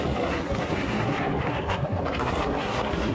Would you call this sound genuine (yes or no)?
no